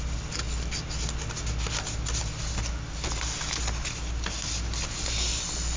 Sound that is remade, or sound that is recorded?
recorded